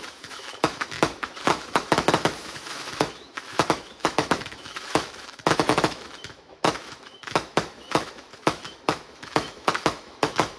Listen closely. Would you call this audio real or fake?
fake